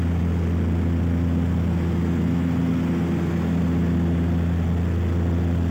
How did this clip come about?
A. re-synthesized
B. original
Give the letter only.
B